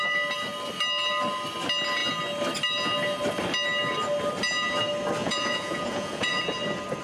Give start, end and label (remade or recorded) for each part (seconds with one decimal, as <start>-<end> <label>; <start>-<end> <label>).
0.0-5.2 recorded; 5.2-6.4 remade; 6.4-7.0 recorded